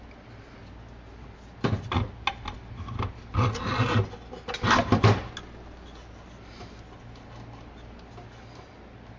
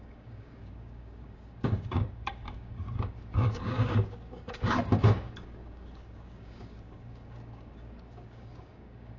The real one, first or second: first